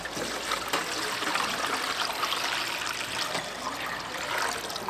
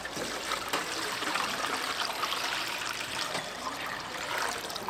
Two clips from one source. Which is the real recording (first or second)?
first